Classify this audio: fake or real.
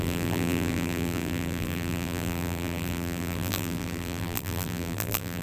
fake